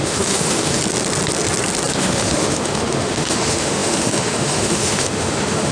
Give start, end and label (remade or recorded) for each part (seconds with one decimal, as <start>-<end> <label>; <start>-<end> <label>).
0.0-0.8 remade; 0.8-1.9 recorded; 1.9-5.7 remade